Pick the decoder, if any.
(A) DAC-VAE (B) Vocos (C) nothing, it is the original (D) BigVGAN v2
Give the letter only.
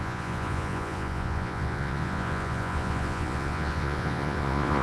B